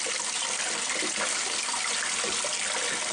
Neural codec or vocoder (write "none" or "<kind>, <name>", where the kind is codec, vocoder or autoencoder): none